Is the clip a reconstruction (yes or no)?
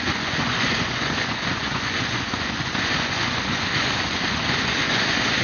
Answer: yes